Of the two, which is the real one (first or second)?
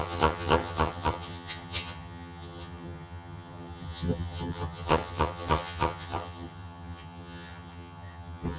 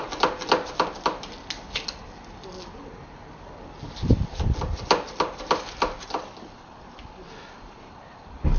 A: second